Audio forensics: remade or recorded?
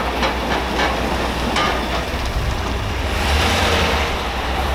recorded